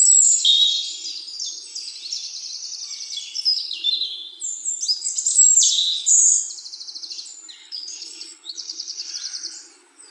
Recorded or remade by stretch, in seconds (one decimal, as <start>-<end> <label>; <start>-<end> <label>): 0.0-7.6 recorded; 7.6-9.1 remade; 9.1-10.1 recorded